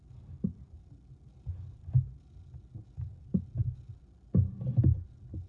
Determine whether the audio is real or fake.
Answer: real